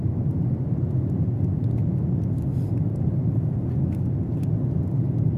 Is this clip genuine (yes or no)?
yes